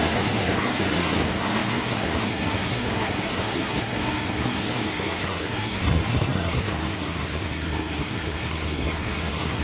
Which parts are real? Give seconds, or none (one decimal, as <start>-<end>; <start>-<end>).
none